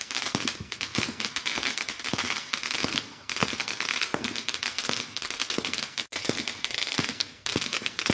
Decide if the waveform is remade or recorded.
remade